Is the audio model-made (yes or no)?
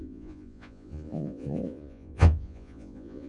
yes